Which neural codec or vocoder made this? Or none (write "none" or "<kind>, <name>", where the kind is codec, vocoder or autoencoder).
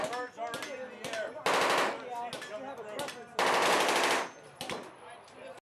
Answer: none